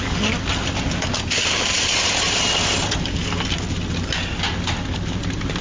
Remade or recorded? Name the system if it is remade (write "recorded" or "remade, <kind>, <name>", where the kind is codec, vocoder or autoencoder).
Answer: recorded